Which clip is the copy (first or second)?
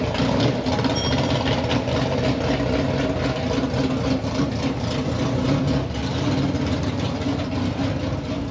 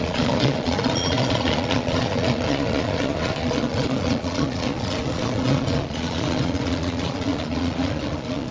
second